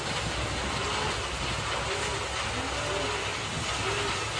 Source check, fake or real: real